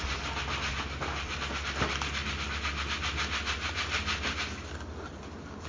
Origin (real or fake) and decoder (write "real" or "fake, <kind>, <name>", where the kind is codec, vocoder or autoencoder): real